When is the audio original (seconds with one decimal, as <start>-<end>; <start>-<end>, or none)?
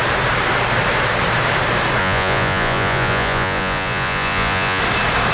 0.0-2.0; 4.8-5.3